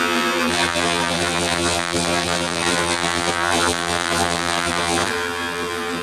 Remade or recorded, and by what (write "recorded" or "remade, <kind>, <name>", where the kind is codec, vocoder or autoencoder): remade, vocoder, BigVGAN v2